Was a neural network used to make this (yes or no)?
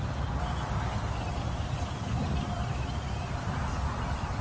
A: no